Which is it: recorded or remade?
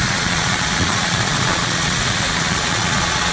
remade